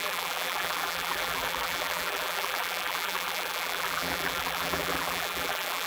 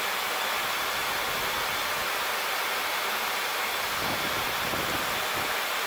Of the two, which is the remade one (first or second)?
first